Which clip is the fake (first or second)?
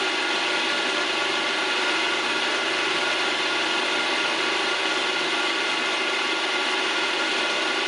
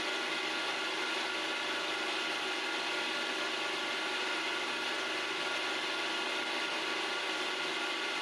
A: first